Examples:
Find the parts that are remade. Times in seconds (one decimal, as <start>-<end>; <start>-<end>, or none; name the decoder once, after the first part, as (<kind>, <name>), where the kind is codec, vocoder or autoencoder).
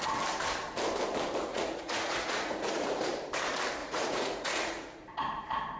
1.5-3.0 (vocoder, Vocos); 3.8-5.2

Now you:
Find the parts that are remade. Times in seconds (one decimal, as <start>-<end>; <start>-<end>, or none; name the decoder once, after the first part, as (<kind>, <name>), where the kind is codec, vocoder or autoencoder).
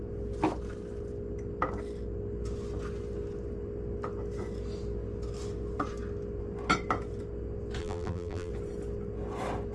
7.8-8.5 (vocoder, BigVGAN v2)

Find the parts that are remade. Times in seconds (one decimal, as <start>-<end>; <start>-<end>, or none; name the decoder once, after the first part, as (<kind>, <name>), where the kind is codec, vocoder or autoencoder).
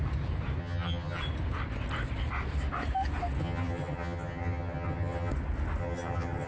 0.6-1.2 (vocoder, HiFi-GAN); 3.4-5.3; 5.8-6.5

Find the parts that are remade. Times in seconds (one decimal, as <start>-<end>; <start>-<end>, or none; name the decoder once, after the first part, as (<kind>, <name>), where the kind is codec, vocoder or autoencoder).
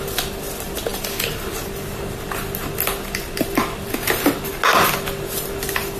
none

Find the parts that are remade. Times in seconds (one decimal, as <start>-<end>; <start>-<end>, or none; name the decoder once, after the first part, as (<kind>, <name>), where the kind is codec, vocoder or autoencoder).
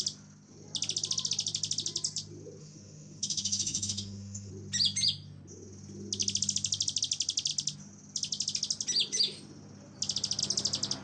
2.6-4.5 (autoencoder, DAC-VAE)